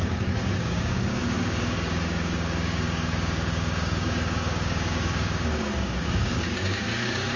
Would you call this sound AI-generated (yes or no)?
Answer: yes